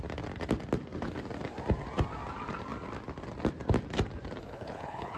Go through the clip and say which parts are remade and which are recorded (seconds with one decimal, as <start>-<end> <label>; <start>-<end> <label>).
0.0-4.4 recorded; 4.4-5.2 remade